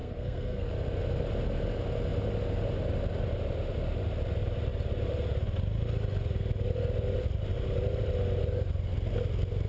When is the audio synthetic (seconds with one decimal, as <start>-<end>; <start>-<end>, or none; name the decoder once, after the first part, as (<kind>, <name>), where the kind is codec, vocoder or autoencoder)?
0.0-0.7 (codec, SNAC)